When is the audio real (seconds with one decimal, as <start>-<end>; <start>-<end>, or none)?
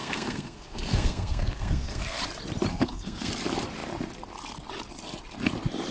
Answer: 2.2-2.7; 3.3-5.9